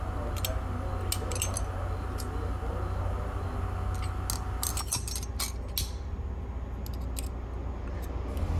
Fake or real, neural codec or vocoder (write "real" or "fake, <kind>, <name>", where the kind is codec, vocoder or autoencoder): real